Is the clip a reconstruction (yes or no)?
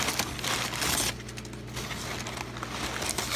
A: no